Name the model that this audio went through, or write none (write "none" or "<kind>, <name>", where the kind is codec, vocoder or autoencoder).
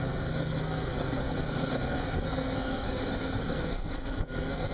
codec, SNAC